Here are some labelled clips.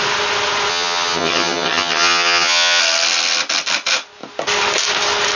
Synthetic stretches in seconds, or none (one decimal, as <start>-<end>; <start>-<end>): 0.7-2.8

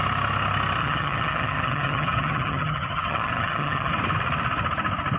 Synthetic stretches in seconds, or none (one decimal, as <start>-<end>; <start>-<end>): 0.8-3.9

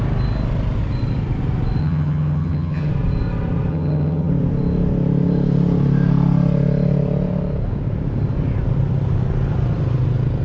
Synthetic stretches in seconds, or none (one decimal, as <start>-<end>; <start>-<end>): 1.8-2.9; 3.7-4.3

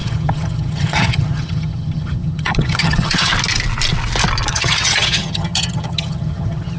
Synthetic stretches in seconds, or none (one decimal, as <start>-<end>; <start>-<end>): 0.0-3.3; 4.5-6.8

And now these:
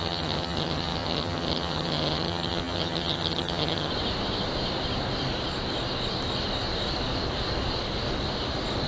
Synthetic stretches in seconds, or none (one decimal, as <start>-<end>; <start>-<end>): 0.0-3.9

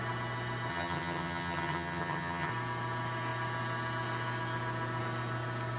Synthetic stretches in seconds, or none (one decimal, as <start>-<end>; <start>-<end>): 0.7-2.5